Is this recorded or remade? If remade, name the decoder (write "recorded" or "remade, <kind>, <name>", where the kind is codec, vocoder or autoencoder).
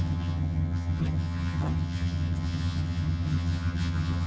remade, vocoder, HiFi-GAN